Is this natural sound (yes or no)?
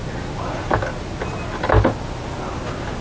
yes